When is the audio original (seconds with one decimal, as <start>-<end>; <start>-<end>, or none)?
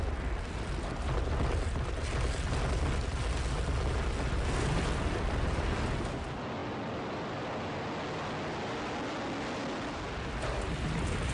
0.0-11.3